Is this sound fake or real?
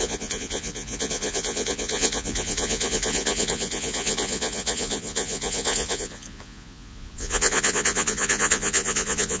fake